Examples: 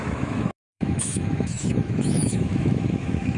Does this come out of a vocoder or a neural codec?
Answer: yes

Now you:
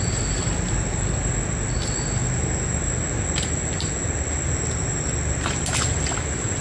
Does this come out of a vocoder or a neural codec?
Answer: no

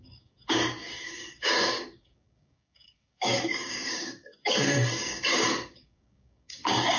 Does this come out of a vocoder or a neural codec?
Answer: yes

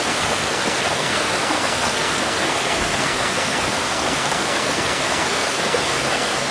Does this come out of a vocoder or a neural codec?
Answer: yes